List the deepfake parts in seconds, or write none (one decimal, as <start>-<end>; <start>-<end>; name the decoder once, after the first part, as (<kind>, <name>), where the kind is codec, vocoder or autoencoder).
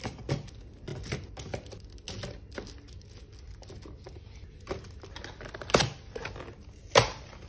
none